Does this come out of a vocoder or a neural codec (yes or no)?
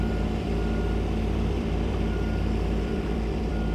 yes